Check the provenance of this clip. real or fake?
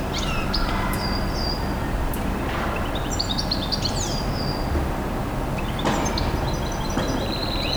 real